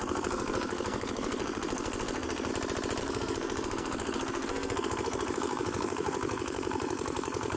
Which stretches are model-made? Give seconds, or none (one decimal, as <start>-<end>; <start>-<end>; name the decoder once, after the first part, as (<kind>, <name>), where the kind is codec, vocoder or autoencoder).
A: 0.0-2.5 (codec, SNAC); 3.0-7.6